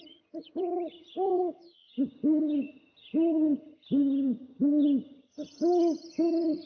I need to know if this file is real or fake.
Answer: fake